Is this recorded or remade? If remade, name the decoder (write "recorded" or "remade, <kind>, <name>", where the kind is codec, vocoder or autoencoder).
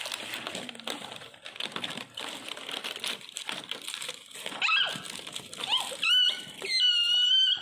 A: remade, vocoder, BigVGAN v2